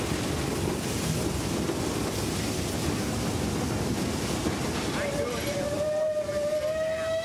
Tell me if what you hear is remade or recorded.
recorded